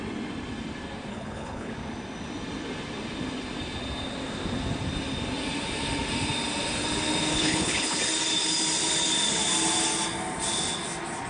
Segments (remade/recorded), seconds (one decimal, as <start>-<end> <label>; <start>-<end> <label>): 0.0-1.1 recorded; 1.1-1.7 remade; 1.7-7.3 recorded; 7.3-8.0 remade; 8.0-11.3 recorded

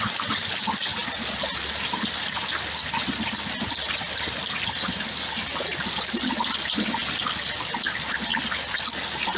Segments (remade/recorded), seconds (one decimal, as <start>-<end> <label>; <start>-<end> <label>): 0.0-9.4 recorded

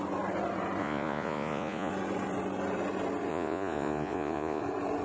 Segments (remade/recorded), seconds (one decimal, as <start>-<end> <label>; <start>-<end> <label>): 0.0-0.8 recorded; 0.8-1.9 remade; 1.9-3.3 recorded; 3.3-4.6 remade; 4.6-5.0 recorded

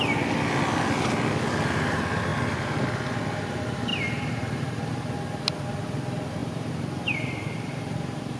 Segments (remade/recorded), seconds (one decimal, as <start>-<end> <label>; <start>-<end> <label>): 0.0-3.9 recorded; 3.9-5.0 remade; 5.0-6.4 recorded; 6.4-8.4 remade

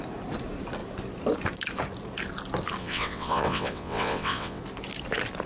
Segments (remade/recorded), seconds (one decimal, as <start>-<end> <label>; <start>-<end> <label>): 0.0-2.8 recorded; 2.8-4.6 remade; 4.6-5.5 recorded

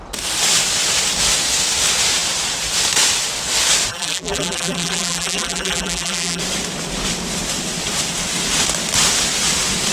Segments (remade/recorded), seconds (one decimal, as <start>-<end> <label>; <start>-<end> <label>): 0.0-3.9 recorded; 3.9-6.4 remade; 6.4-9.9 recorded

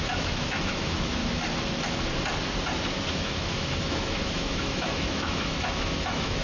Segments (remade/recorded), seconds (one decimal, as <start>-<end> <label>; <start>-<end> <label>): 0.0-1.2 remade; 1.2-3.1 recorded; 3.1-6.4 remade